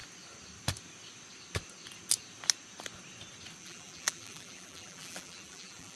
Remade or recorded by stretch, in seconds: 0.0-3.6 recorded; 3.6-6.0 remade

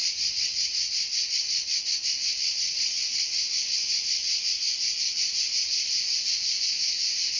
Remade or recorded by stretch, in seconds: 0.0-4.4 remade; 4.4-7.4 recorded

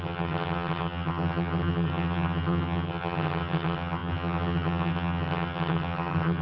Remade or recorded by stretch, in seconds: 0.0-6.4 remade

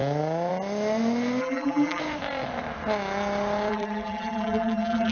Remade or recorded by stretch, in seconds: 0.0-1.4 recorded; 1.4-2.0 remade; 2.0-3.7 recorded; 3.7-5.1 remade

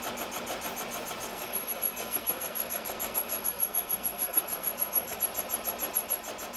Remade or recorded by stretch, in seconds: 0.0-1.3 recorded; 1.3-5.2 remade; 5.2-6.6 recorded

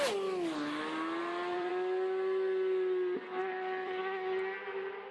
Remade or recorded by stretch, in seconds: 0.0-1.2 recorded; 1.2-1.7 remade; 1.7-3.4 recorded; 3.4-4.0 remade; 4.0-5.1 recorded

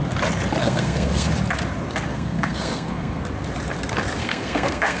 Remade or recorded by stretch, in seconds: 0.0-0.6 recorded; 0.6-1.3 remade; 1.3-2.1 recorded; 2.1-3.2 remade; 3.2-4.2 recorded; 4.2-5.0 remade

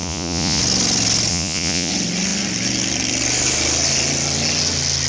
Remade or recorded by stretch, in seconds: 0.0-0.6 remade; 0.6-1.3 recorded; 1.3-1.9 remade; 1.9-5.1 recorded